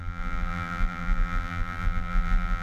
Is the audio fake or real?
fake